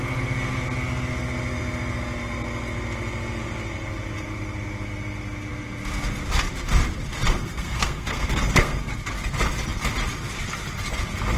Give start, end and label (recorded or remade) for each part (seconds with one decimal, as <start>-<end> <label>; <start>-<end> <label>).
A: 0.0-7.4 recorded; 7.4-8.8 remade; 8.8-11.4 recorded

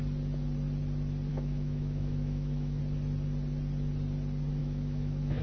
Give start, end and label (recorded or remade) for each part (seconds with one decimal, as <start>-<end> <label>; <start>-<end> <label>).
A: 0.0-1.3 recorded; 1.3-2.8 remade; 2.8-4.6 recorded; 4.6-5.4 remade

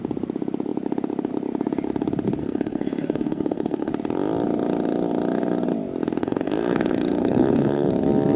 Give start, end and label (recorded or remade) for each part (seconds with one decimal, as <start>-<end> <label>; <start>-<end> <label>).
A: 0.0-2.4 recorded; 2.4-3.9 remade; 3.9-6.2 recorded; 6.2-7.9 remade; 7.9-8.4 recorded